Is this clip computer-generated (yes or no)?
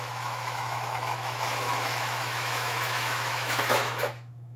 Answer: yes